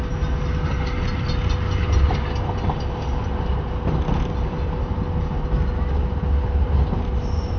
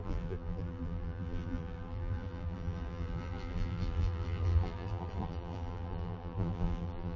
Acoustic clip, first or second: first